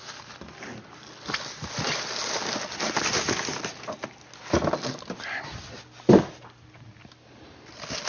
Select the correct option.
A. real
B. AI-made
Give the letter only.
A